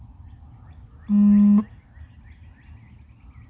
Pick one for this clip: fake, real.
real